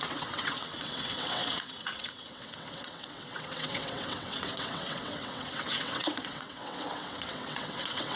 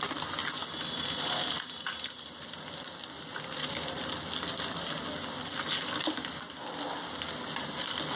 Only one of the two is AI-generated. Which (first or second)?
first